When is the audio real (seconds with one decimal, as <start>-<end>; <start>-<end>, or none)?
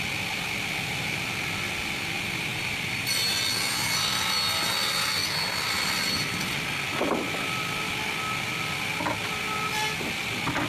0.0-10.7